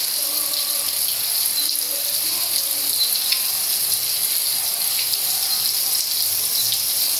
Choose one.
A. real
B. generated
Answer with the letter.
A